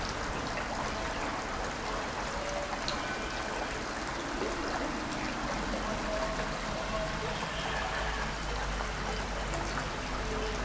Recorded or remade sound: recorded